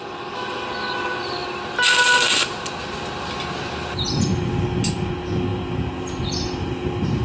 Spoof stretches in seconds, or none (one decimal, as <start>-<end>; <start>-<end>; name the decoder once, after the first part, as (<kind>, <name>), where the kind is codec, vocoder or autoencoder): none